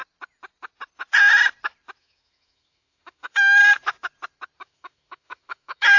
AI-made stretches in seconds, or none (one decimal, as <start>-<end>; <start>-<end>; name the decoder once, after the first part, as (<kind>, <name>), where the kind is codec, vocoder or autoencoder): 2.0-3.6 (autoencoder, DAC-VAE); 4.6-6.0